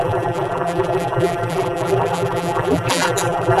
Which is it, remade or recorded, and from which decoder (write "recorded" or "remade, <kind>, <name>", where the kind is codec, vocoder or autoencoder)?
remade, vocoder, BigVGAN v2